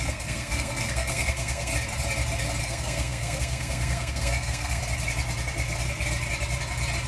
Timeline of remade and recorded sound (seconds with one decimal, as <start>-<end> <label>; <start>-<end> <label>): 0.0-1.7 remade; 1.7-2.6 recorded; 2.6-4.8 remade; 4.8-7.1 recorded